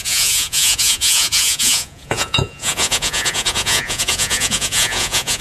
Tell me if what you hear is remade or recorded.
remade